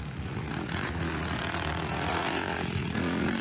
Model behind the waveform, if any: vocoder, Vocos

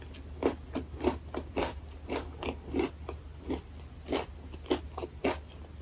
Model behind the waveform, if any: none